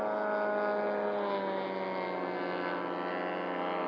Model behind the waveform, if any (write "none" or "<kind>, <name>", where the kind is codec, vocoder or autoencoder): none